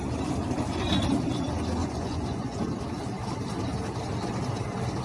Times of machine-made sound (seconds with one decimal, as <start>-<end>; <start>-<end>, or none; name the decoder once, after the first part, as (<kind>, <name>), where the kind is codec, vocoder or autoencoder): 1.8-2.6 (vocoder, Vocos)